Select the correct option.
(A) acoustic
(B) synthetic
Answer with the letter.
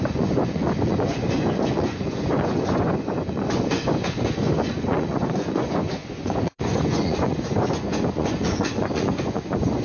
B